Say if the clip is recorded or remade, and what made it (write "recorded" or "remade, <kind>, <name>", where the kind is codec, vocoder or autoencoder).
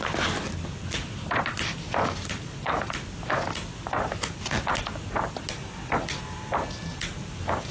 recorded